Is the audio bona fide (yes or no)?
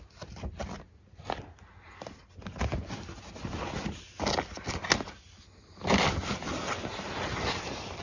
yes